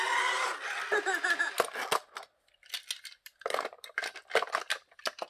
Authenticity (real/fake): real